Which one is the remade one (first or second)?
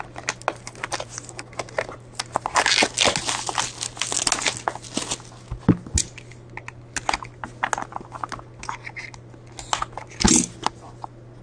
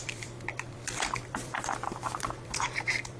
second